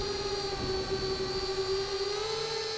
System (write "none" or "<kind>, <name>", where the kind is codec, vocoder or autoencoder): none